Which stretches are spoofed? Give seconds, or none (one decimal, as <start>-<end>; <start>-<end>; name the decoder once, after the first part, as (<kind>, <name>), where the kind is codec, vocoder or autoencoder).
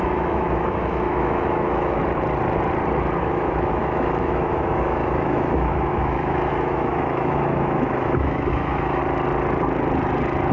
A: 0.0-2.0 (autoencoder, DAC-VAE); 3.2-9.0